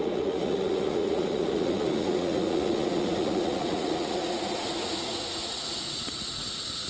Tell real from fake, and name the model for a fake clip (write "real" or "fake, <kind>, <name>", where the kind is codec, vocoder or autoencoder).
fake, vocoder, Vocos